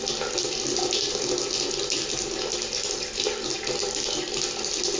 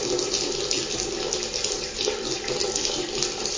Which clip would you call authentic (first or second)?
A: first